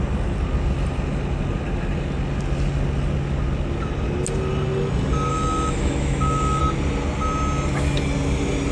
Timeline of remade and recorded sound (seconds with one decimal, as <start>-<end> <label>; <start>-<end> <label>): 0.0-5.3 recorded; 5.3-6.6 remade; 6.6-8.7 recorded